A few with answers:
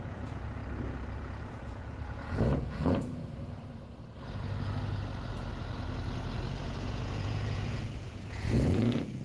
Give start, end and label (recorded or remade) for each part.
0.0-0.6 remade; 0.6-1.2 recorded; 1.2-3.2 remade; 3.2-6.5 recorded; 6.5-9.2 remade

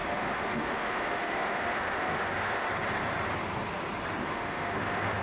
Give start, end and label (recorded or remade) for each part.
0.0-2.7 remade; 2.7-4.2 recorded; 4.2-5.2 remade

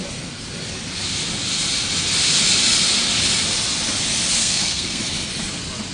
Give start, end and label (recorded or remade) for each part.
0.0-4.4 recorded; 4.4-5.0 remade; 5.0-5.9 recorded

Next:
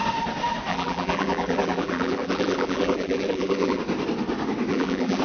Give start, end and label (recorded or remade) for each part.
0.0-0.7 recorded; 0.7-3.8 remade; 3.8-4.7 recorded; 4.7-5.2 remade

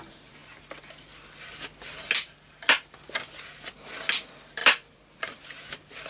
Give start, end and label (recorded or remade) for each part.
0.0-4.6 recorded; 4.6-5.2 remade; 5.2-6.1 recorded

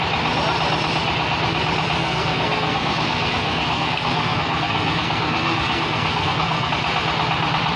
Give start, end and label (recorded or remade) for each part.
0.0-2.0 recorded; 2.0-6.7 remade; 6.7-7.8 recorded